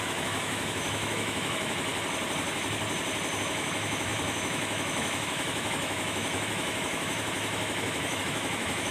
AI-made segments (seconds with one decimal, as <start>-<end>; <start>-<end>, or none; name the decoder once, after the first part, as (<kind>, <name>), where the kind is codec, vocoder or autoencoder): 0.0-1.9 (autoencoder, DAC-VAE); 3.4-8.9